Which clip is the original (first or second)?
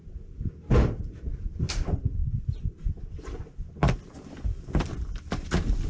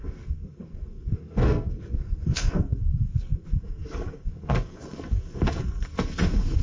first